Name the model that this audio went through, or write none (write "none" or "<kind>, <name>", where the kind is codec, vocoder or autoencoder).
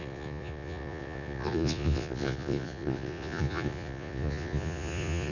vocoder, Vocos